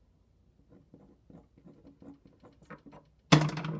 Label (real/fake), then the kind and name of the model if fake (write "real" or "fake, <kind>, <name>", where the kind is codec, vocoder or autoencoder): real